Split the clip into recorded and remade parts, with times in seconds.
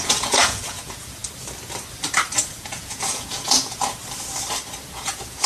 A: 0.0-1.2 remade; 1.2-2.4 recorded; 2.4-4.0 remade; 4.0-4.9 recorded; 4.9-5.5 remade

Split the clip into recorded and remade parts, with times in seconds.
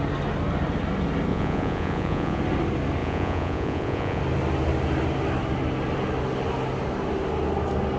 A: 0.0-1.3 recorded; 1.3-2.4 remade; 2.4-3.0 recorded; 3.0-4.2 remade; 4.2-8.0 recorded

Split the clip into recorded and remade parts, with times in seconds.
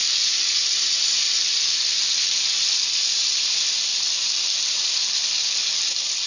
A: 0.0-6.3 recorded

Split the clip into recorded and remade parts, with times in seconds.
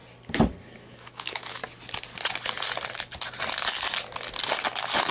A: 0.0-0.6 recorded; 0.6-1.6 remade; 1.6-5.1 recorded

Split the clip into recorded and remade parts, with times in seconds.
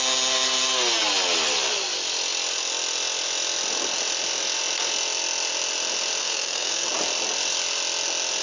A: 0.0-6.2 recorded; 6.2-6.9 remade; 6.9-8.4 recorded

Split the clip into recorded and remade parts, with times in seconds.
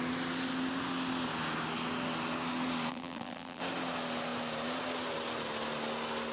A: 0.0-2.9 recorded; 2.9-3.6 remade; 3.6-6.3 recorded